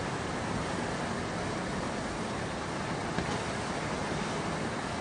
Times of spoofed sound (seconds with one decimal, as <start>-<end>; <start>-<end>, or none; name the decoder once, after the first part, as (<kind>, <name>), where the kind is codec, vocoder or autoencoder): none